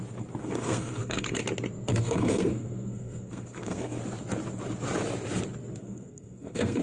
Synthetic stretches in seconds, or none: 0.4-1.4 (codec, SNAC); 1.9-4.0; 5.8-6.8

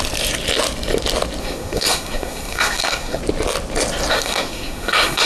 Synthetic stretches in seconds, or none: 1.4-3.2 (codec, SNAC); 4.1-5.3

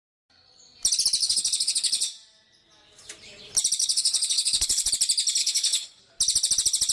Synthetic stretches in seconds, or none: 1.2-2.1 (codec, HILCodec); 3.8-4.9; 5.4-6.0

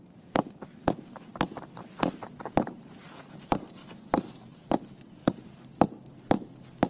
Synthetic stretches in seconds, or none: 3.8-4.9 (vocoder, BigVGAN v2)

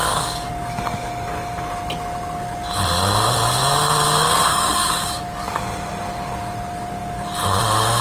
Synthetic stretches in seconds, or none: 0.0-0.5 (codec, DAC); 4.5-5.6